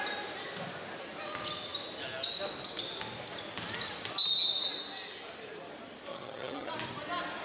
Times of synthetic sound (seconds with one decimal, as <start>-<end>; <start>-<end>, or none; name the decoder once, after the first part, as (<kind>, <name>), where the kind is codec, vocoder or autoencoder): 6.1-6.7 (vocoder, HiFi-GAN)